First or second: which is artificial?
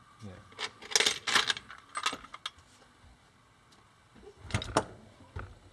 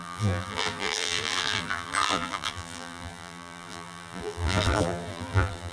second